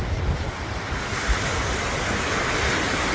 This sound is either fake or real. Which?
real